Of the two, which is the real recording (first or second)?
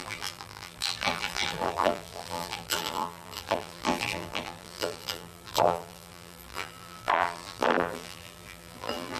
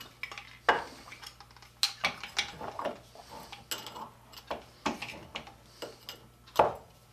second